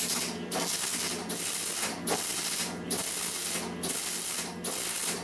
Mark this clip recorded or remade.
recorded